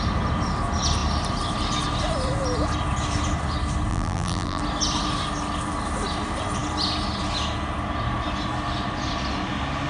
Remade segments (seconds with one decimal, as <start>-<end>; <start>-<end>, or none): 3.9-4.6